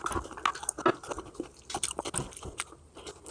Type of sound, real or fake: real